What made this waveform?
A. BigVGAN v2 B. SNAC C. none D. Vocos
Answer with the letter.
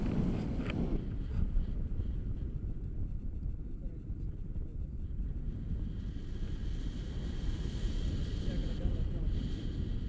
C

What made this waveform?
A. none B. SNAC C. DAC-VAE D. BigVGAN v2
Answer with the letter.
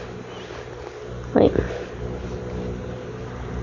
A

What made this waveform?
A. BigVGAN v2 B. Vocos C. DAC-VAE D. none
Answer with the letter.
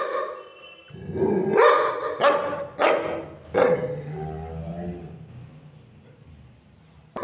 D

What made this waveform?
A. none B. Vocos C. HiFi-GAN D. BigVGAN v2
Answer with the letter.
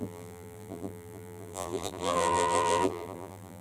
D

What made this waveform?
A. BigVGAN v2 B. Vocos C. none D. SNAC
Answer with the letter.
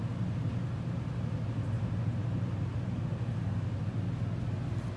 C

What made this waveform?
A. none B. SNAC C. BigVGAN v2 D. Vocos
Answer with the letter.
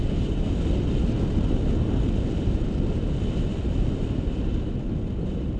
A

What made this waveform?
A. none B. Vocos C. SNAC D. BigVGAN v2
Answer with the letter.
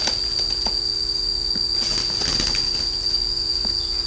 A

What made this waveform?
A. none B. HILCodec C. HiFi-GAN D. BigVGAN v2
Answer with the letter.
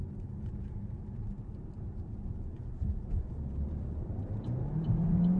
D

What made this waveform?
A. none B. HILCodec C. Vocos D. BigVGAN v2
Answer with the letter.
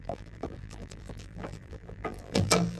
D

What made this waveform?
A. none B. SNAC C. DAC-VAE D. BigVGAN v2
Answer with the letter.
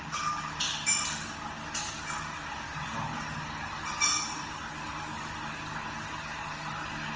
A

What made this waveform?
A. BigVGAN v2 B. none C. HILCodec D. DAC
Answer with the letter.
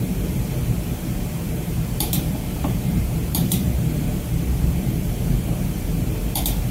A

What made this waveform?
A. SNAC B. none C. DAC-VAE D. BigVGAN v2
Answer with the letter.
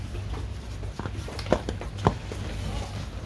B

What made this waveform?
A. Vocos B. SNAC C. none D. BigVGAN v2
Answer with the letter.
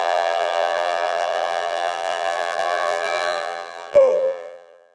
D